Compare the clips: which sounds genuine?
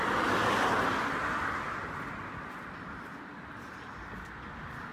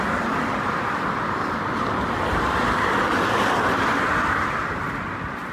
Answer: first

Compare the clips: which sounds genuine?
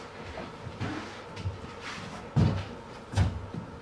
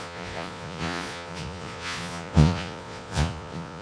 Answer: first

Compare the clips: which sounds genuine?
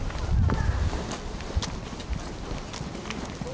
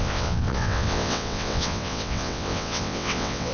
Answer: first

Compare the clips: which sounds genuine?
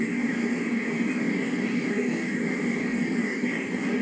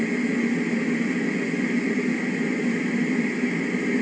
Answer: second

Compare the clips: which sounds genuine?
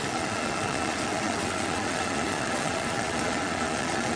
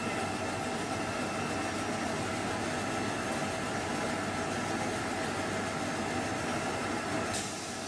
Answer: second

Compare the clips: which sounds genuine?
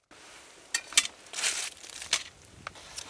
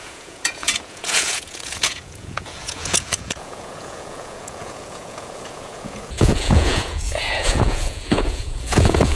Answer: first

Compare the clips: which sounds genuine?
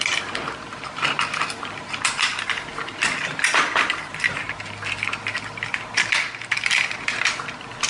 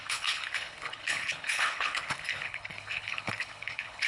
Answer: first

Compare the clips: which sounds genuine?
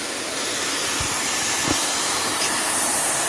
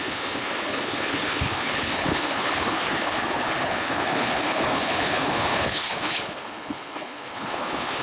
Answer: first